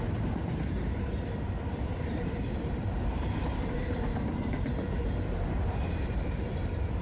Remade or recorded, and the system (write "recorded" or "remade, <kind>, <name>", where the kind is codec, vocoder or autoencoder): remade, vocoder, BigVGAN v2